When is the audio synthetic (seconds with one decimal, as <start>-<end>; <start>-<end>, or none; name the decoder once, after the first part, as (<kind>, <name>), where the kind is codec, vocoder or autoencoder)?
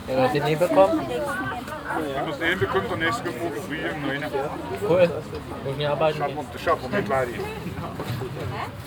0.0-1.0 (codec, DAC)